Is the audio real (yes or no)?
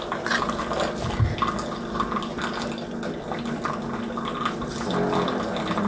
yes